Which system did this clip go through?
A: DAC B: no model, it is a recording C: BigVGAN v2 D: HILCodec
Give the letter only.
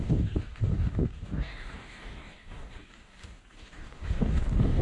A